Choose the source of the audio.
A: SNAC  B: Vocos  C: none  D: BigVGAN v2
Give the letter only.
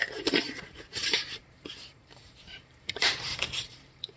D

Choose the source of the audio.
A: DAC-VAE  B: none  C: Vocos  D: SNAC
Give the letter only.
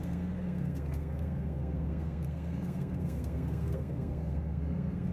D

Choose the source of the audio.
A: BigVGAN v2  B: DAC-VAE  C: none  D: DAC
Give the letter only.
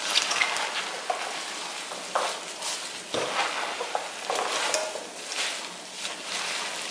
C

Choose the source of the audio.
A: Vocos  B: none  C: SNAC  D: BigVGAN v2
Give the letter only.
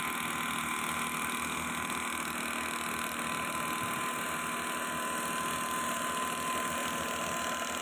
B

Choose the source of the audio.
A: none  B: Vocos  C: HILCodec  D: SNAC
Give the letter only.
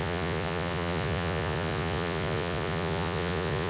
B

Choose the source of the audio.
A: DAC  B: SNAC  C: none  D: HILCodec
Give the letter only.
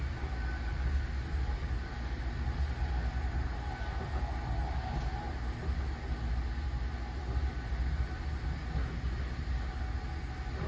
C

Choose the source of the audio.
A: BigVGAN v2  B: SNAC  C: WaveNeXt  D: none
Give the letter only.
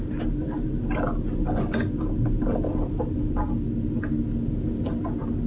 D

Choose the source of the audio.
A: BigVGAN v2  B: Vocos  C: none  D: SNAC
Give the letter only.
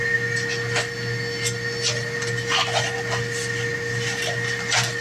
C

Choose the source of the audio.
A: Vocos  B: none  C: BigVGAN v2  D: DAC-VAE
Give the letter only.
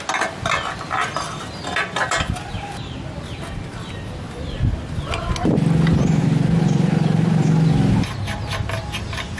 B